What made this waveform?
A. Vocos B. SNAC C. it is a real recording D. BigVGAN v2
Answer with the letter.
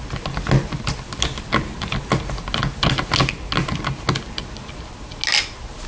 C